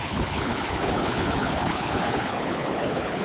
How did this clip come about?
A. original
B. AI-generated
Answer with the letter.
B